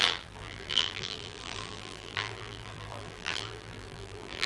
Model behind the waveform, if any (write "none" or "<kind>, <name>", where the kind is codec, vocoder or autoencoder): vocoder, BigVGAN v2